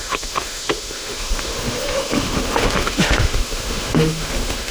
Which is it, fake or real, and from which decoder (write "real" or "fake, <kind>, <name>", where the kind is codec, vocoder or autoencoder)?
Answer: fake, autoencoder, DAC-VAE